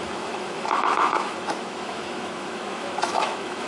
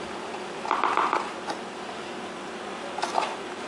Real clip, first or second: second